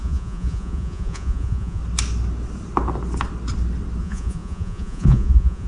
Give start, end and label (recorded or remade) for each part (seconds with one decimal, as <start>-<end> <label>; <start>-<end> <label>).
0.0-1.8 remade; 1.8-4.0 recorded; 4.0-5.7 remade